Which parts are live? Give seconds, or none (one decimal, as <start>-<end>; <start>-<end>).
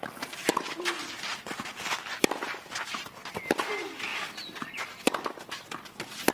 0.0-0.4; 1.0-6.3